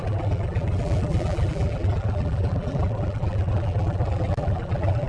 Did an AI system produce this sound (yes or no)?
yes